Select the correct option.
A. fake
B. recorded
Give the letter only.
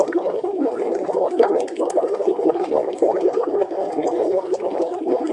A